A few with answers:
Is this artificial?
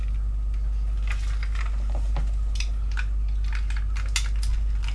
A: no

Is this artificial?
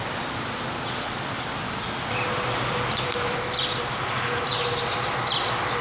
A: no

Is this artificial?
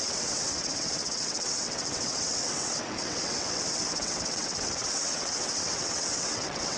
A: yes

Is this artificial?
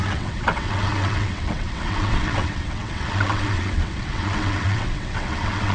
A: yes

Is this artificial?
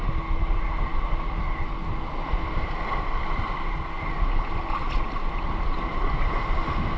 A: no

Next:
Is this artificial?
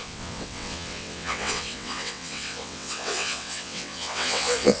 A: yes